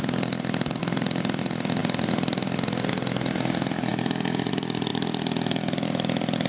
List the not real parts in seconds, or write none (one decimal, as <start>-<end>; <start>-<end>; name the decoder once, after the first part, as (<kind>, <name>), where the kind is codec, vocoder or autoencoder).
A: 1.8-2.9 (vocoder, BigVGAN v2); 3.9-4.5; 4.9-6.5